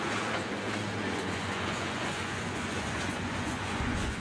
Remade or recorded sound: remade